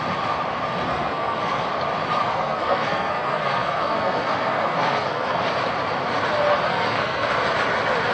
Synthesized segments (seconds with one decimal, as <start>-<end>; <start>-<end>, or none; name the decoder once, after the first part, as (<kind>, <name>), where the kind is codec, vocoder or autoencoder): 0.9-1.6 (codec, SNAC); 2.2-5.4; 6.7-7.3